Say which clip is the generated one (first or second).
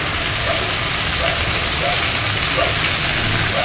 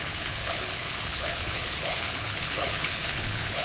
second